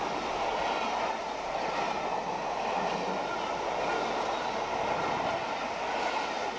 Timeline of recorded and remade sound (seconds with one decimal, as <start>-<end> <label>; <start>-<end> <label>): 0.0-6.6 recorded